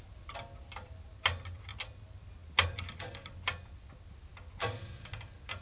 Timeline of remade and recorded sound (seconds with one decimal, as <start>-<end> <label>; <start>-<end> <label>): 0.0-5.6 recorded

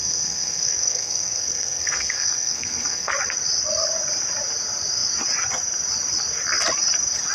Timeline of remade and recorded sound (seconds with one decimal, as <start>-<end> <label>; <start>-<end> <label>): 0.0-3.1 remade; 3.1-7.3 recorded

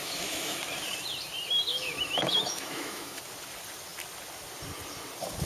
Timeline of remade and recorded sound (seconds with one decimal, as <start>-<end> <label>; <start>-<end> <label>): 0.0-0.6 remade; 0.6-1.7 recorded; 1.7-3.2 remade; 3.2-5.5 recorded